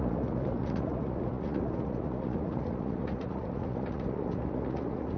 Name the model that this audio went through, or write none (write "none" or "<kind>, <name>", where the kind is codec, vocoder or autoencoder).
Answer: vocoder, Vocos